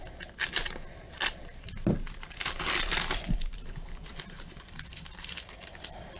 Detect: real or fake fake